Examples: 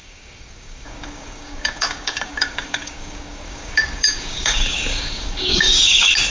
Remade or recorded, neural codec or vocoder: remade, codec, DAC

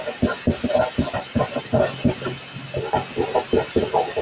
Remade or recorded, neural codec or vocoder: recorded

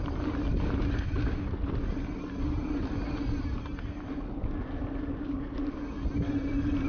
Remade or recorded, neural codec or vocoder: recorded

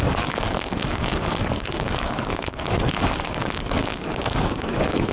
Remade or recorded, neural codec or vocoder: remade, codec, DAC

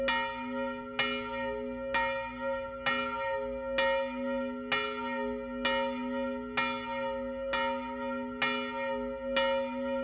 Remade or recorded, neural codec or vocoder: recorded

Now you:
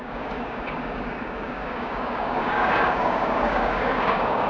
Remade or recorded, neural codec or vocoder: remade, codec, DAC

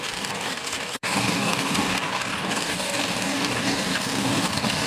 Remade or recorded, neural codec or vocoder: remade, codec, DAC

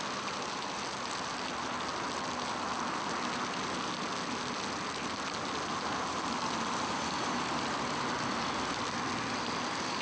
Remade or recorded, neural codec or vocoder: recorded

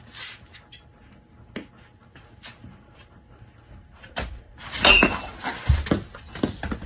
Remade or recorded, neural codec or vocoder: recorded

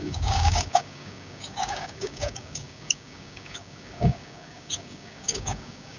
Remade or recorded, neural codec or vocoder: remade, codec, DAC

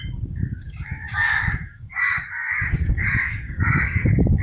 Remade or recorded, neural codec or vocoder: remade, codec, DAC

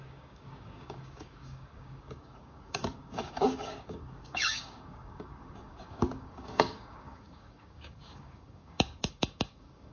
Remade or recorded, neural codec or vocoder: remade, codec, DAC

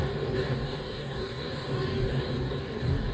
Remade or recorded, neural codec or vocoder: remade, codec, DAC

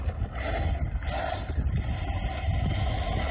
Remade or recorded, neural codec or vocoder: recorded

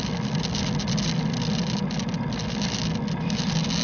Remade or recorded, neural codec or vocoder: recorded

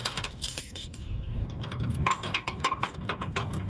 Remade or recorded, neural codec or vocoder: remade, codec, DAC